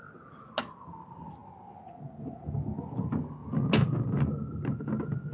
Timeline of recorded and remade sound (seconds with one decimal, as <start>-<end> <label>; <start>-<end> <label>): 0.0-5.3 recorded